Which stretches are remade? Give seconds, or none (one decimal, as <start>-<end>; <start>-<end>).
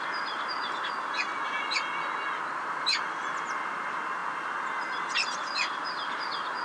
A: none